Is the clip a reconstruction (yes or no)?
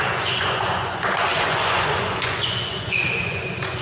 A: yes